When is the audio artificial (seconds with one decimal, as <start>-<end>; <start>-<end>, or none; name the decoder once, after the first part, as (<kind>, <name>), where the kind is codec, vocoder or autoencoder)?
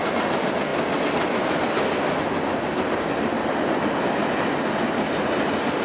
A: none